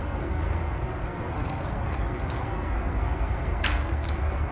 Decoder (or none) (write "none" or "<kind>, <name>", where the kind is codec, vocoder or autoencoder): codec, SNAC